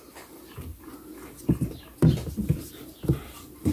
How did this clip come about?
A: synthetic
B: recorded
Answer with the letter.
B